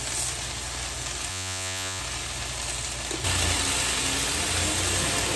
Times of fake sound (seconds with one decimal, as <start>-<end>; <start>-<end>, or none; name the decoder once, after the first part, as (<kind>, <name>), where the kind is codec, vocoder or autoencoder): 1.3-2.0 (vocoder, Vocos)